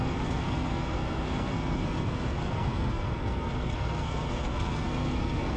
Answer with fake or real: fake